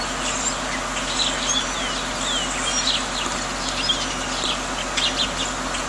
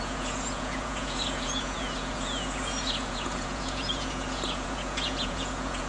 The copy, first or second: second